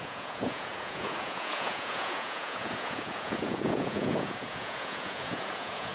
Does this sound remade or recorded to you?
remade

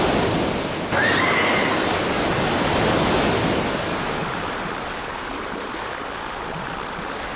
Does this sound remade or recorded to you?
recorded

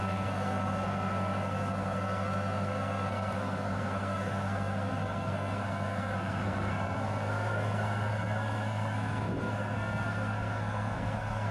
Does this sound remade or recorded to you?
remade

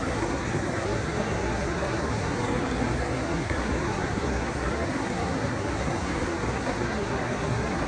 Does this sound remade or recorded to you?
remade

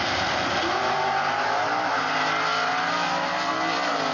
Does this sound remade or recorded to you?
recorded